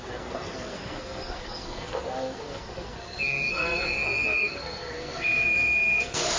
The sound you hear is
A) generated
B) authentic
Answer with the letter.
A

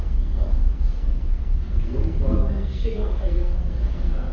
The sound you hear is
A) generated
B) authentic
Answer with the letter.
A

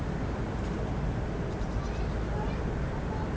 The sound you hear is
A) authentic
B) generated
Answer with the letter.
A